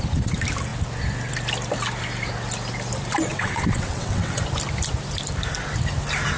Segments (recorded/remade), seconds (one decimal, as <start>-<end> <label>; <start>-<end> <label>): 0.0-3.3 recorded; 3.3-4.4 remade; 4.4-6.4 recorded